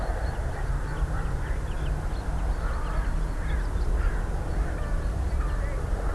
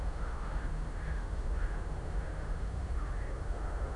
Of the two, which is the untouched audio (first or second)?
first